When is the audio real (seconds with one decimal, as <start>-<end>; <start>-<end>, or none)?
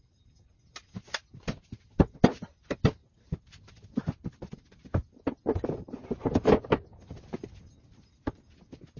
0.0-3.0; 4.6-9.0